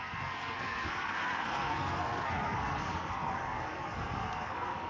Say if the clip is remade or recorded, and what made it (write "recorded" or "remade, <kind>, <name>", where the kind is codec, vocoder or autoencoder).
remade, codec, SNAC